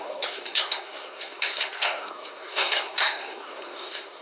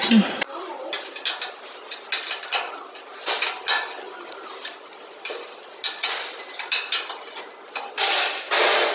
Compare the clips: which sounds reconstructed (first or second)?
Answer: first